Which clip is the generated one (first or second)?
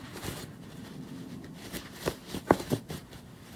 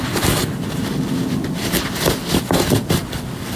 first